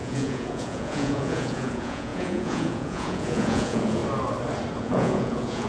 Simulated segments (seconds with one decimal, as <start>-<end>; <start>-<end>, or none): 0.0-4.0; 4.8-5.7